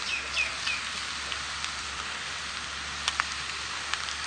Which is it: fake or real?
fake